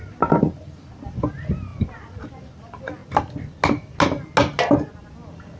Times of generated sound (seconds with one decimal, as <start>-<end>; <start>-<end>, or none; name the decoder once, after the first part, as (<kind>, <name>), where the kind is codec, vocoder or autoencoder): none